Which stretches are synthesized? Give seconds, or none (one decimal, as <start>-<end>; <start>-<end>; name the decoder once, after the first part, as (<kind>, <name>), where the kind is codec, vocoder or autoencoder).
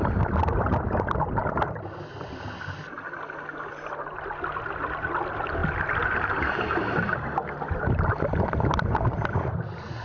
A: none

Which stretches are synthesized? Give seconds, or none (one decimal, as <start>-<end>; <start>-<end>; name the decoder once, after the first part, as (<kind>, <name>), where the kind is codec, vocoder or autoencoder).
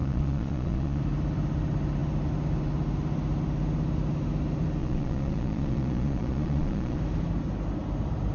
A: 0.0-1.0 (vocoder, Vocos); 4.8-7.0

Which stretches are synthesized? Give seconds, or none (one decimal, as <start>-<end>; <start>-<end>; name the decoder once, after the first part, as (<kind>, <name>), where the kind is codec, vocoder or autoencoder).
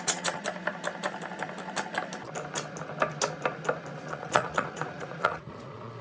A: 0.0-0.4 (vocoder, Vocos); 4.0-6.0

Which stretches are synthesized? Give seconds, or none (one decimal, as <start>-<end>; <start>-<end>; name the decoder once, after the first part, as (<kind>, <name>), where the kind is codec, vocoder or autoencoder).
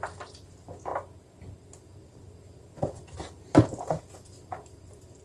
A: none